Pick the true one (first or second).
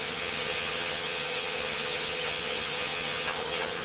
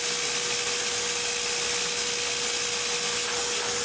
second